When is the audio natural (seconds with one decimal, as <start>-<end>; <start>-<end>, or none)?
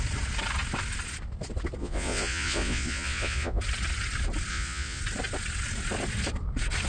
0.0-1.8; 3.6-4.5; 5.0-6.9